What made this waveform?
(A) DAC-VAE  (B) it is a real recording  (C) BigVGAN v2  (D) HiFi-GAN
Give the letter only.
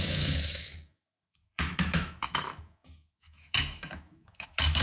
A